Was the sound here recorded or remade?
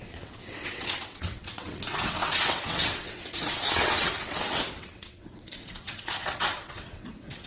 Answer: remade